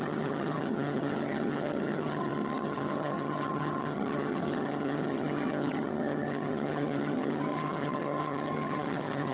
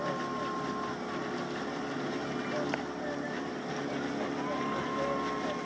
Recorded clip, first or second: second